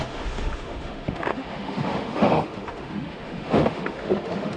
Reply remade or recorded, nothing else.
remade